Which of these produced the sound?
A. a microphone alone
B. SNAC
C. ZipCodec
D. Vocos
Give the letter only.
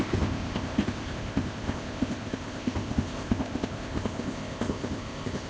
C